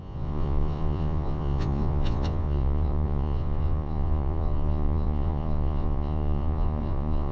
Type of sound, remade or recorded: remade